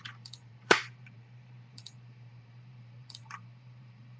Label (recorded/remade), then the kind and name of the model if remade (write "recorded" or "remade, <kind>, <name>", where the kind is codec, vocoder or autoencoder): remade, vocoder, BigVGAN v2